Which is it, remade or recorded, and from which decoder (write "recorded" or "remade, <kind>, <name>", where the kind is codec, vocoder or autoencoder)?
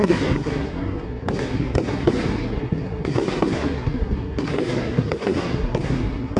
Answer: remade, codec, SNAC